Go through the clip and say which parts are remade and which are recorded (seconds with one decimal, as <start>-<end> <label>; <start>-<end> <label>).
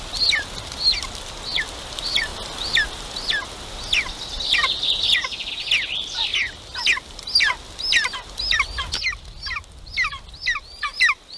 0.0-11.4 recorded